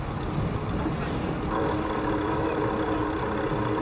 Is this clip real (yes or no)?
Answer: yes